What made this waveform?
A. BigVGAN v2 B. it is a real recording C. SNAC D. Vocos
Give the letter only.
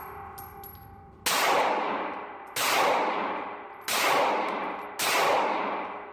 B